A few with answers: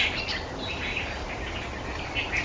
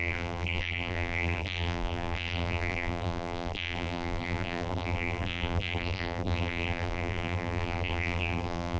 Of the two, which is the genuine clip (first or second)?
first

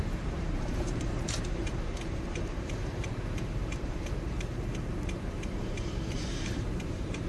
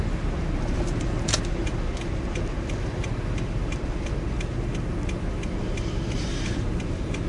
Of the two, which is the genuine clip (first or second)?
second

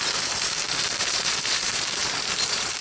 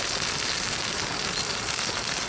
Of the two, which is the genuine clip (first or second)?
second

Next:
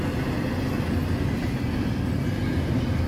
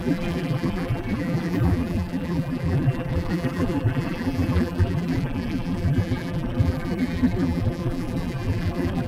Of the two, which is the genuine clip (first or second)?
first